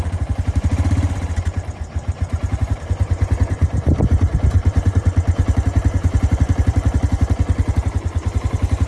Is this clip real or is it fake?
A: fake